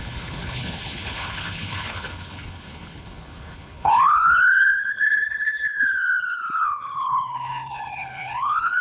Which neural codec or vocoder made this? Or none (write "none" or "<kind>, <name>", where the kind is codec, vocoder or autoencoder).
codec, HILCodec